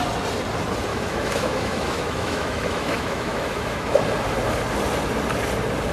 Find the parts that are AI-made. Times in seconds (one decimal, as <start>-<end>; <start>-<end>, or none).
0.9-4.0